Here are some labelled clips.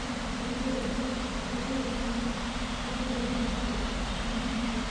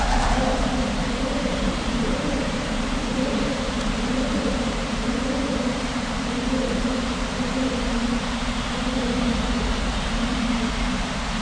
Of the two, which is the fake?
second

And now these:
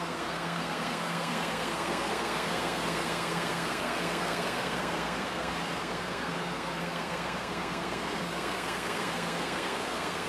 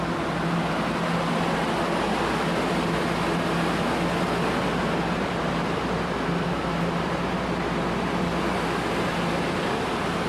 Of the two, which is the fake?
first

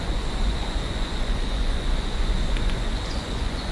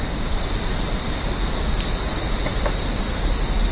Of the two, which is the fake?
first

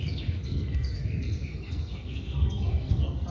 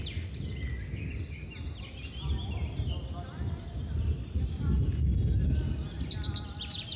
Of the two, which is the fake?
first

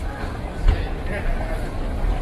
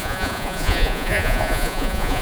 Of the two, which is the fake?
second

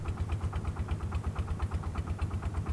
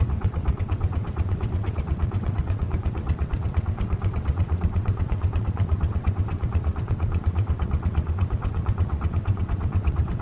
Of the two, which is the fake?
second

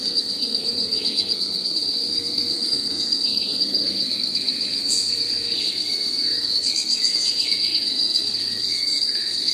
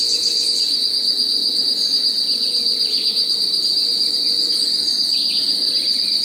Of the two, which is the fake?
first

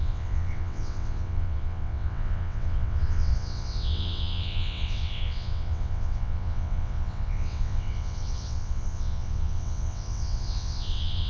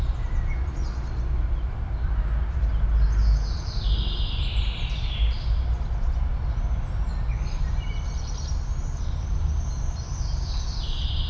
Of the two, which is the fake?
first